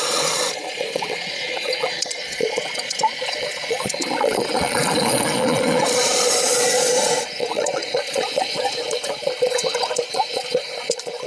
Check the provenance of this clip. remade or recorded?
remade